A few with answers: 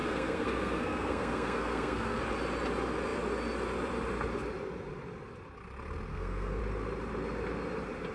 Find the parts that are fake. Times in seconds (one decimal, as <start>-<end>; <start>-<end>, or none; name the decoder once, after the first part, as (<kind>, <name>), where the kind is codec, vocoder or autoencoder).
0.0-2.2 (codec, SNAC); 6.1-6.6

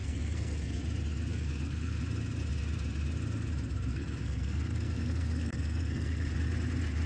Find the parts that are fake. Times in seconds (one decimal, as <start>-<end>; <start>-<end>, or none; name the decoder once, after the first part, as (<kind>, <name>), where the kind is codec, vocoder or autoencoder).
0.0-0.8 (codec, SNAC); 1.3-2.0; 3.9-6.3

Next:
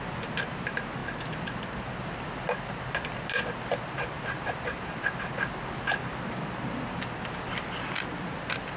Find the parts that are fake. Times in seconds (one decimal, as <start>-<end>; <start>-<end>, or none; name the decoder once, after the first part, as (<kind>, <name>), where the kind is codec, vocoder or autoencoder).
none